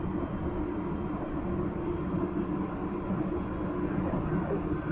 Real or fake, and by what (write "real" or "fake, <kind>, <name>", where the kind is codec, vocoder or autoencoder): real